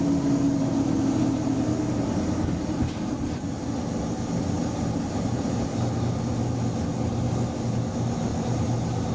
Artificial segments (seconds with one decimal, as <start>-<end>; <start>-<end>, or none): none

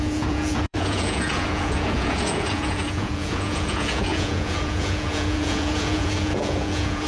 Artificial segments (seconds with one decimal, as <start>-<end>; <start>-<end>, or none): 0.0-7.1

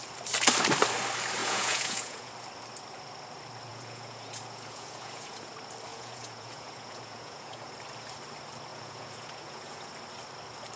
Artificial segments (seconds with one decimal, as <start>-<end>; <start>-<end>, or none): 1.4-2.3; 3.7-5.5; 5.9-7.7; 8.7-9.9

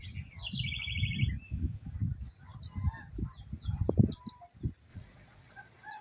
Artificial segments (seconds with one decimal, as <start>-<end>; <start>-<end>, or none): 4.9-6.0